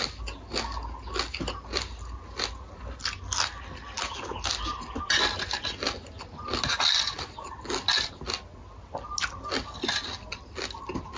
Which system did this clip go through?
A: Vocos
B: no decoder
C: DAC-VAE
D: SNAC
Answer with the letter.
B